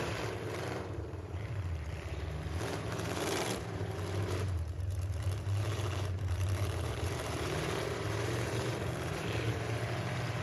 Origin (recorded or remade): remade